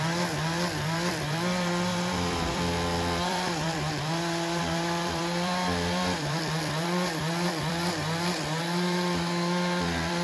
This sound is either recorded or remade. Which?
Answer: remade